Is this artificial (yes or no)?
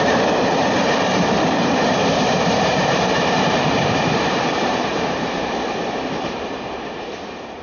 yes